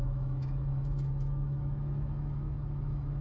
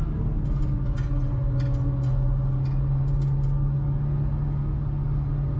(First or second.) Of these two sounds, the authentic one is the second